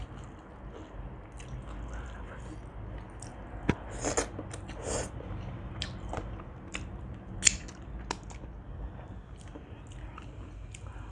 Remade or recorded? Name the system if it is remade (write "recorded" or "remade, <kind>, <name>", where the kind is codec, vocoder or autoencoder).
recorded